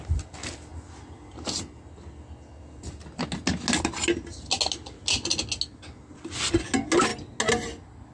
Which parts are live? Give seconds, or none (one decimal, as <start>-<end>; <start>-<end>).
0.0-8.1